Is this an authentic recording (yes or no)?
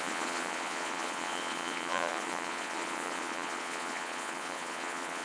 no